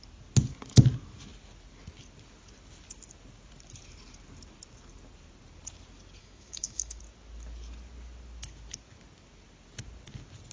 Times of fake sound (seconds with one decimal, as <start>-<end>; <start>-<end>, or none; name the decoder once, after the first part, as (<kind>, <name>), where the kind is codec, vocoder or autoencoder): 6.2-7.0 (autoencoder, DAC-VAE)